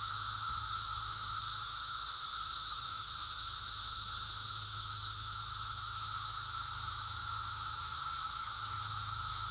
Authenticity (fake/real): fake